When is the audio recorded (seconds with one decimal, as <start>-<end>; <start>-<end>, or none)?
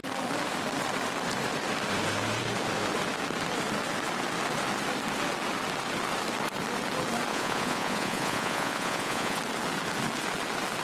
0.0-7.3; 9.4-10.8